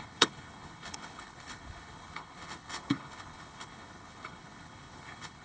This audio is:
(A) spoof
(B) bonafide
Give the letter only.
A